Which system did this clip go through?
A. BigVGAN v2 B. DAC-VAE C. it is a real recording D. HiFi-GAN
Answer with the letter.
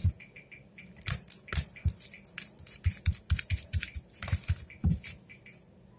C